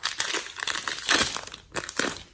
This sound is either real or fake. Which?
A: real